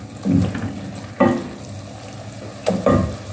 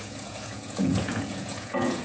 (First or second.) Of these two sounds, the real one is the first